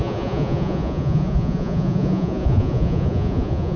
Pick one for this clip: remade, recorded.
remade